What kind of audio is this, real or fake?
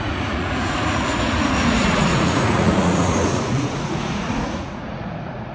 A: fake